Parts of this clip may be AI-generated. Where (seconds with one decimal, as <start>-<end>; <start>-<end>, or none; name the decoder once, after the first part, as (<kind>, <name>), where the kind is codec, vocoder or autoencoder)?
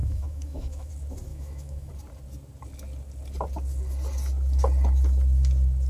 0.0-0.9 (autoencoder, DAC-VAE); 1.3-1.9